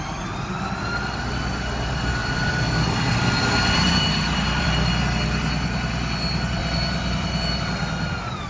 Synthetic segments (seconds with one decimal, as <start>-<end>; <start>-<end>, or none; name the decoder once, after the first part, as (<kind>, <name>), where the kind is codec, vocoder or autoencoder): 2.2-4.9 (vocoder, BigVGAN v2); 6.6-7.5

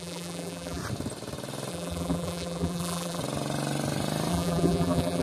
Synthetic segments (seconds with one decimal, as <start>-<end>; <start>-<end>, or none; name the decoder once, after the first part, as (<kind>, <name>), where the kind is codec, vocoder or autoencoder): 0.0-0.8 (vocoder, BigVGAN v2); 1.7-3.2; 4.3-5.2

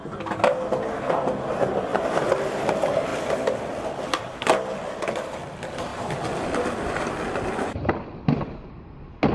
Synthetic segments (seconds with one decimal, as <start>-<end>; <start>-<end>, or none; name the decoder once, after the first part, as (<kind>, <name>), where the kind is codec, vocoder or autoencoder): 1.9-2.6 (vocoder, BigVGAN v2); 5.9-7.1